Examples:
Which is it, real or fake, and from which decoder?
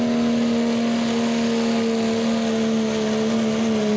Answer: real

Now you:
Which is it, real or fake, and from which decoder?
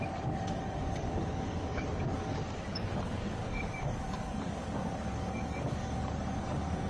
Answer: fake, codec, DAC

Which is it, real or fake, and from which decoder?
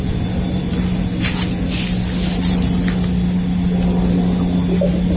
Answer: real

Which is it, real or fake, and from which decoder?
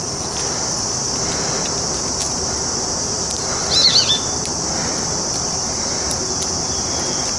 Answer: real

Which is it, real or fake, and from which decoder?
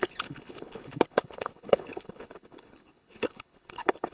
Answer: fake, codec, HILCodec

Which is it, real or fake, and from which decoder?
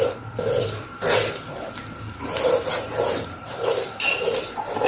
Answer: real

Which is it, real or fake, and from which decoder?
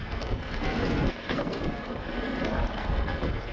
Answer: fake, codec, SNAC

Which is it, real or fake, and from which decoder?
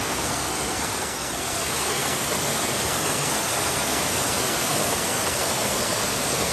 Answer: fake, codec, SNAC